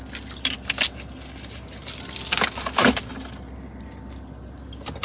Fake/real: real